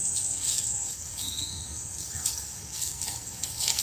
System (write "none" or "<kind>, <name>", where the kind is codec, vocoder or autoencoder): codec, SNAC